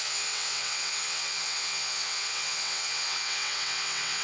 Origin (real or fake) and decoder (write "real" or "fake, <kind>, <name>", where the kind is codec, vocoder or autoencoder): fake, vocoder, WaveNeXt